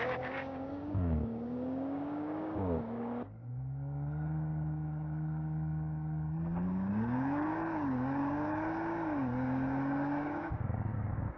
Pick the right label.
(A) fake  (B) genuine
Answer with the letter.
A